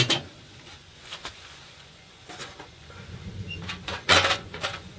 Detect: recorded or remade remade